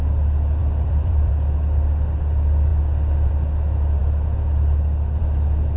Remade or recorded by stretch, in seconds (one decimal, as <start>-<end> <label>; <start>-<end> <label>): 0.0-0.6 recorded; 0.6-1.3 remade; 1.3-2.7 recorded; 2.7-3.3 remade; 3.3-5.8 recorded